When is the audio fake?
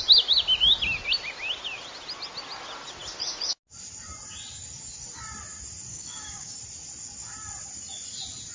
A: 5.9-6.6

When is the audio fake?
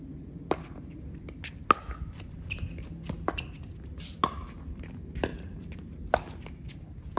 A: 5.3-6.3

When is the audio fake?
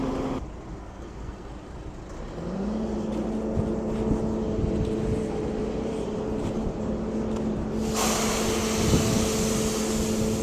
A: 0.8-1.5